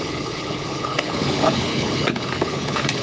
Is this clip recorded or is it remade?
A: remade